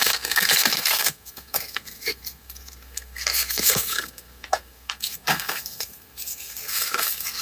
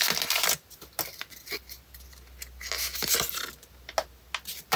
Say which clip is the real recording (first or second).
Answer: second